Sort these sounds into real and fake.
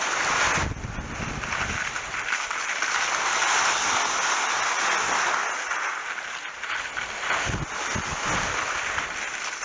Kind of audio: real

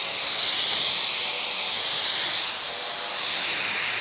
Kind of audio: real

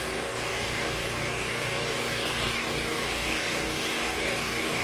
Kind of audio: fake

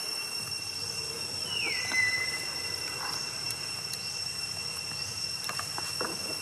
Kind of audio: real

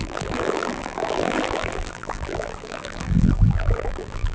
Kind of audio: fake